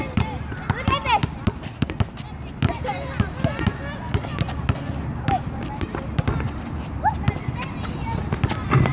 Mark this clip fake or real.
real